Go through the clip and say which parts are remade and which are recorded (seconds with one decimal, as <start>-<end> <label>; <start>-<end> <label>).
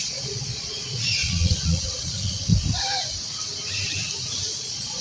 0.0-2.5 remade; 2.5-4.6 recorded; 4.6-5.0 remade